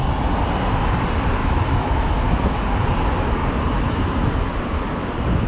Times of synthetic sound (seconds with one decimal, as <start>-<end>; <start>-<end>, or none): 1.4-2.1

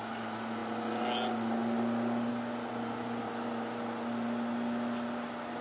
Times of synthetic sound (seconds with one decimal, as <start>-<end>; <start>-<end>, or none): none

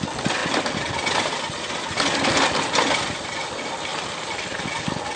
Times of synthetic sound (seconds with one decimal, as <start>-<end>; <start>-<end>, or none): 3.9-4.6

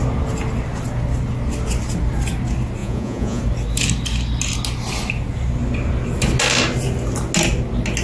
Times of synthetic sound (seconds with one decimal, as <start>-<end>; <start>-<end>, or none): 2.8-3.4

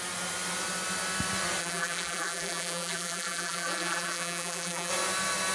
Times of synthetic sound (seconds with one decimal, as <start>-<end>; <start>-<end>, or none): 1.6-4.9

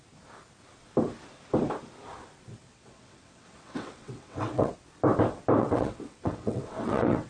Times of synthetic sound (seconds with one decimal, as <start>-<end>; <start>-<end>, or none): 2.6-4.7; 5.6-7.3

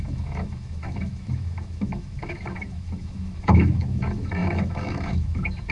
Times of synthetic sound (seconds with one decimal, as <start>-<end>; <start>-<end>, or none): 0.0-5.7

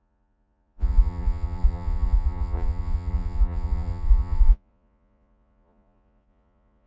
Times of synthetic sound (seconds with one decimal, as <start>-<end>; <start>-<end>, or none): 0.0-6.9